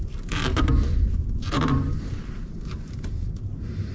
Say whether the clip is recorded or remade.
remade